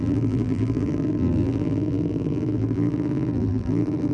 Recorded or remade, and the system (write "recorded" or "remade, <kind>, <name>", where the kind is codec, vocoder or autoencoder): remade, vocoder, BigVGAN v2